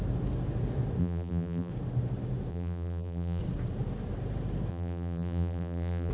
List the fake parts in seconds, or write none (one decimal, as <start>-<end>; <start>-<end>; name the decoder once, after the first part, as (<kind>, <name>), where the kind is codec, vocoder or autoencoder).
1.0-1.7 (vocoder, BigVGAN v2); 2.5-3.4; 4.7-6.1